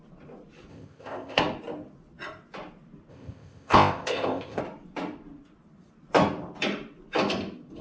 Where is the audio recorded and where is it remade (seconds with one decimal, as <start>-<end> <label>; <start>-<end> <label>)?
0.0-0.7 recorded; 0.7-1.4 remade; 1.4-3.1 recorded; 3.1-4.6 remade; 4.6-7.8 recorded